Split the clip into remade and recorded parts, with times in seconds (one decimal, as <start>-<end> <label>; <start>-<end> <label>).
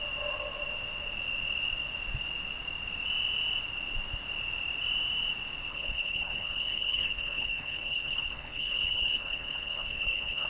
0.0-5.7 recorded; 5.7-10.5 remade